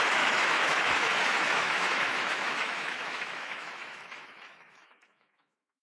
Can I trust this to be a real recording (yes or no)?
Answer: no